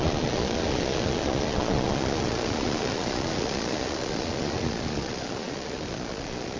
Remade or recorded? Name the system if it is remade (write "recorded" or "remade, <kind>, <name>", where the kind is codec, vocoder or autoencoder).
remade, vocoder, Vocos